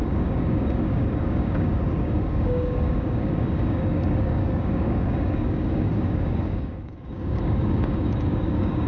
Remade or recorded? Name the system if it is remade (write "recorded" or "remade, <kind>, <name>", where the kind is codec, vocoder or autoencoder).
remade, codec, DAC